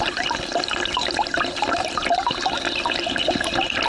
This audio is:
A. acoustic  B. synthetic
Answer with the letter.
A